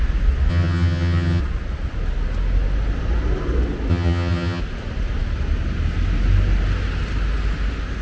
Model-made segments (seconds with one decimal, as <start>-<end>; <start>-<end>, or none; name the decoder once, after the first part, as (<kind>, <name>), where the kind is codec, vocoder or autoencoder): 0.5-1.4 (vocoder, HiFi-GAN); 3.9-4.6